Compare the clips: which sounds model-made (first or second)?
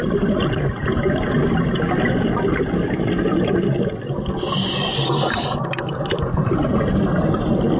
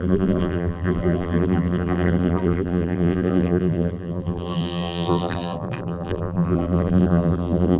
second